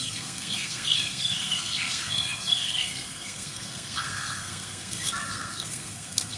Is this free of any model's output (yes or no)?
no